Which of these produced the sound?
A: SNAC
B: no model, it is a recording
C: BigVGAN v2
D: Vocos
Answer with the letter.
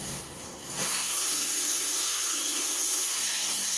A